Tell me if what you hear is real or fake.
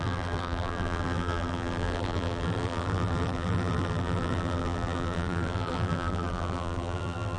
fake